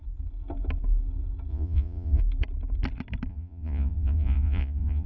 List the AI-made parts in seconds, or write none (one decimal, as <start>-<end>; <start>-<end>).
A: 1.5-2.2; 3.3-5.1